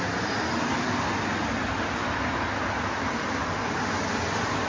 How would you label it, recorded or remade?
recorded